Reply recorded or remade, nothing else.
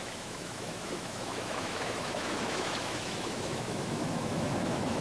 remade